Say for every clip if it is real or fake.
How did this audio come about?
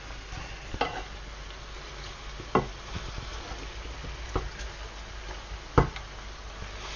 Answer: real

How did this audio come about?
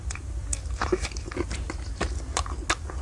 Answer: real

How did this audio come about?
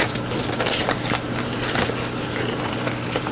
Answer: real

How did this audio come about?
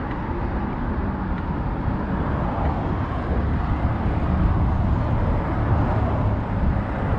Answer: real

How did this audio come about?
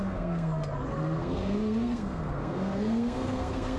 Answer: fake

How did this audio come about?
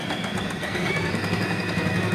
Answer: fake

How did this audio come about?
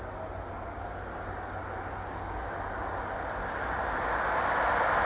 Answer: real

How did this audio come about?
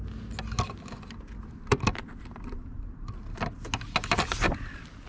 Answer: real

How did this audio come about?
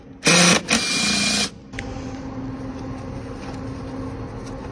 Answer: real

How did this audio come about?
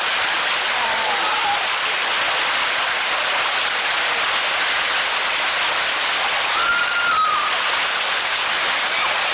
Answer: real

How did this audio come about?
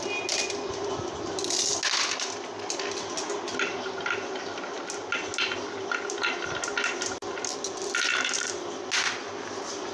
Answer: real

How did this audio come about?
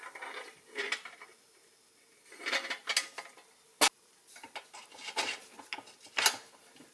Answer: real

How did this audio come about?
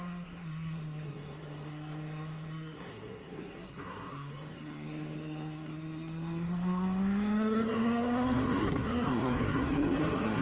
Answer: fake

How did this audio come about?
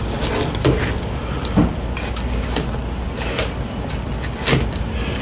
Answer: real